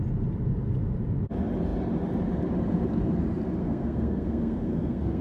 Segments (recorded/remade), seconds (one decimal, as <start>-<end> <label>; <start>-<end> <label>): 0.0-3.6 recorded; 3.6-5.2 remade